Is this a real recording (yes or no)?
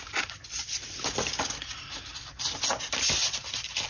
yes